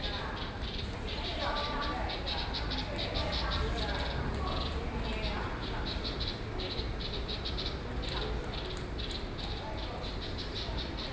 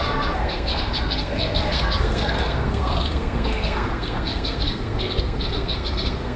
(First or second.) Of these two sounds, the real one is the first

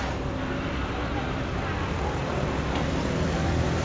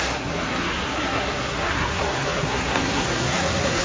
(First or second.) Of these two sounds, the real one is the first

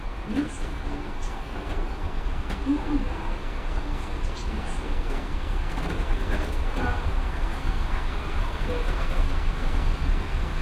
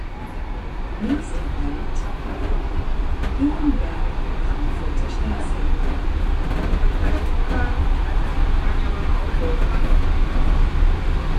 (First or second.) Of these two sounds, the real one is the second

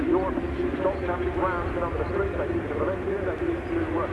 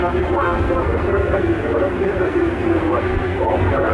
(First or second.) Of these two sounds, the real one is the first